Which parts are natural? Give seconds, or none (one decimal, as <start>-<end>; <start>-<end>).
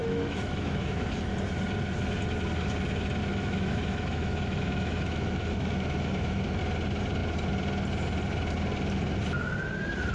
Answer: 1.0-3.2; 6.6-10.1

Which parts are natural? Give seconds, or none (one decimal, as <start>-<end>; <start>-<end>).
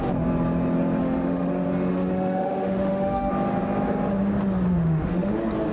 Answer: 0.0-1.0; 1.5-1.9; 3.3-4.7; 5.3-5.7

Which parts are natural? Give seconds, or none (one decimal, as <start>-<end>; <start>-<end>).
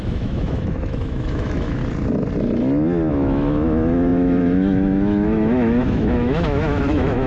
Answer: 1.8-3.1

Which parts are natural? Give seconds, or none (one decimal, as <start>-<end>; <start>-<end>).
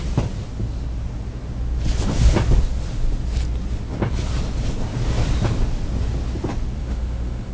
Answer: 0.0-6.8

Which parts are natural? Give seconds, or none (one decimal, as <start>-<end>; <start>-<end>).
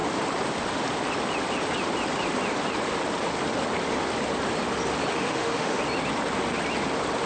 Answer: 0.0-5.1; 5.8-7.3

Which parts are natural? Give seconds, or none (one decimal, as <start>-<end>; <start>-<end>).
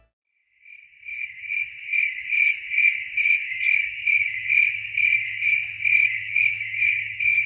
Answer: 0.0-3.4; 5.5-6.0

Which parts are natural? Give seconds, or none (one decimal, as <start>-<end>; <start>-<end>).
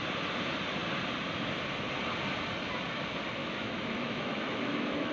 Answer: 0.0-3.4